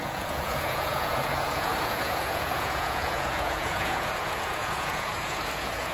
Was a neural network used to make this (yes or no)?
yes